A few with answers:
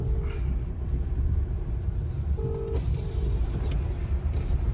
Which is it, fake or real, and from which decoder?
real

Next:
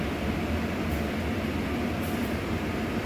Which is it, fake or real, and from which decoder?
fake, vocoder, BigVGAN v2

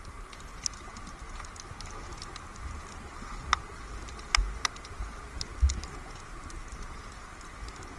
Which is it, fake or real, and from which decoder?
real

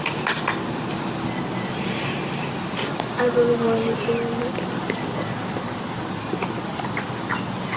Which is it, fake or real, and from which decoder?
fake, vocoder, BigVGAN v2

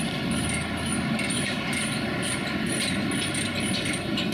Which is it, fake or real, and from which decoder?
real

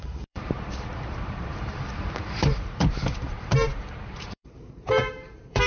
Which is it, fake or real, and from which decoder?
fake, vocoder, BigVGAN v2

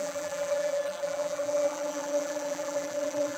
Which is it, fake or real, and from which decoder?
fake, vocoder, BigVGAN v2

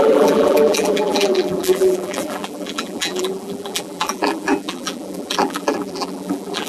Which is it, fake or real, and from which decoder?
fake, vocoder, BigVGAN v2